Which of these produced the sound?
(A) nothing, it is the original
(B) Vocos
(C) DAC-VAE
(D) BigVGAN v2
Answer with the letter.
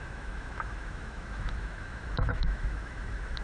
C